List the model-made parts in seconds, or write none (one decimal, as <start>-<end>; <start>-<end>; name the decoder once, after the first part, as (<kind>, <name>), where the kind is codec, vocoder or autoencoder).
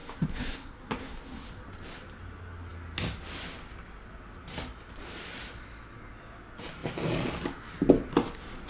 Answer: 0.0-1.5 (codec, SNAC)